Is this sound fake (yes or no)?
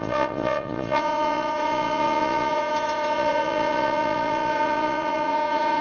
yes